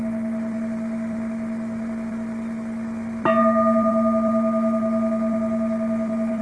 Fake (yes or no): no